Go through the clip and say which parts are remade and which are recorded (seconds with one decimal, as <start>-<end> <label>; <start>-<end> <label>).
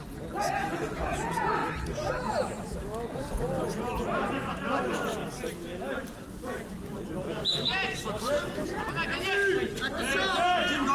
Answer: 0.0-7.5 recorded; 7.5-8.8 remade; 8.8-9.4 recorded; 9.4-10.0 remade; 10.0-10.9 recorded